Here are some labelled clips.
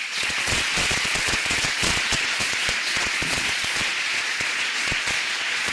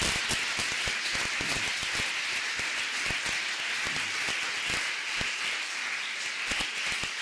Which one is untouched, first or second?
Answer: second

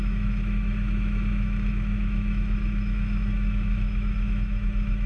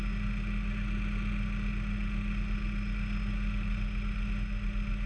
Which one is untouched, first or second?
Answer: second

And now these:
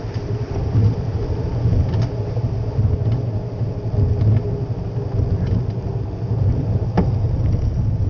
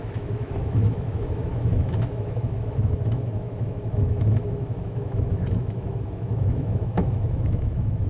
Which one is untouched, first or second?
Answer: first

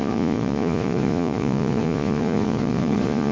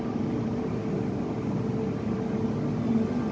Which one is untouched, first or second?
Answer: second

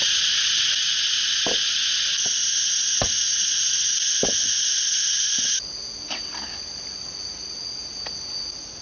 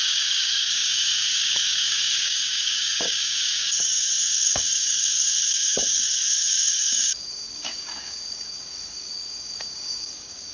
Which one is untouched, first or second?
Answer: first